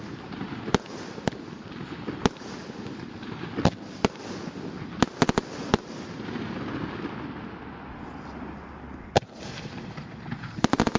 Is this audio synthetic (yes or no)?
no